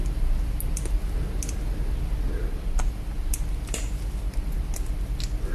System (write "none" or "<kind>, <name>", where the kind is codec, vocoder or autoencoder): none